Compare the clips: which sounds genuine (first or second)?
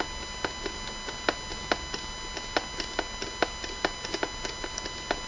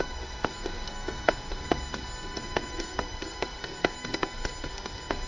first